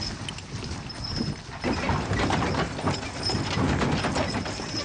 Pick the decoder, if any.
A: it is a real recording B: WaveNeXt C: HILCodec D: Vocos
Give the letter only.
A